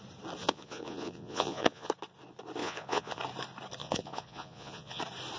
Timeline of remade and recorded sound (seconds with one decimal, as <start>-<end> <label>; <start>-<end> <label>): 0.0-0.4 recorded; 0.4-1.9 remade; 1.9-2.6 recorded; 2.6-3.2 remade; 3.2-3.8 recorded; 3.8-5.0 remade; 5.0-5.4 recorded